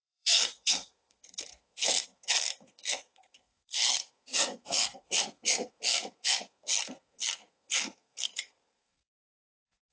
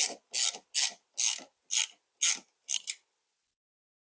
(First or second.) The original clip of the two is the second